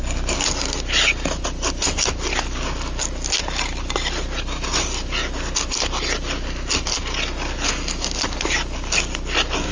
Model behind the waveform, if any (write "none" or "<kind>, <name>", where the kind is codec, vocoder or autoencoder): none